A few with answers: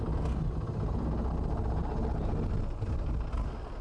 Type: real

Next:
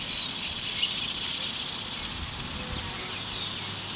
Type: real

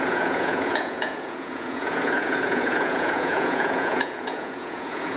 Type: fake